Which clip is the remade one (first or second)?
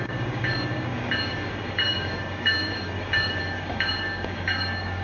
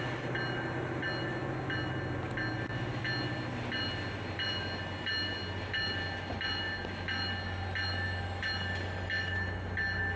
first